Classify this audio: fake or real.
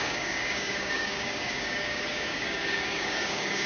fake